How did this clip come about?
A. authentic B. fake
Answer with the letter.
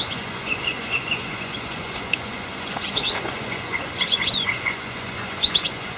B